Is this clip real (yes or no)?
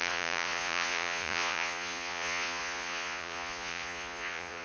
no